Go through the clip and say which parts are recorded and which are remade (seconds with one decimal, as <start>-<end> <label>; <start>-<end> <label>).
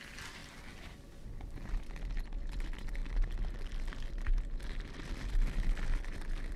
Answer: 0.0-6.6 recorded